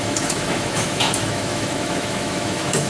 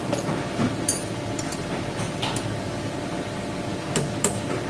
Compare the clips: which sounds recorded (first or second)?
second